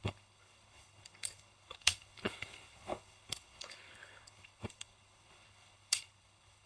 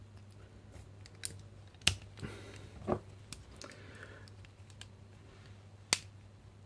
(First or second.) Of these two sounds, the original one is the second